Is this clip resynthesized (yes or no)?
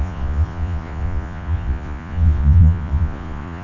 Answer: yes